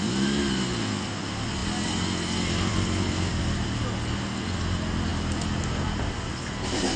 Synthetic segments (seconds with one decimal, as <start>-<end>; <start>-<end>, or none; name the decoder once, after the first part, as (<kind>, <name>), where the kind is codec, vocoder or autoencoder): none